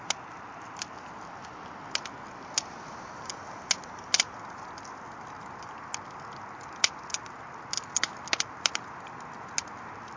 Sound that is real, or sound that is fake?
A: real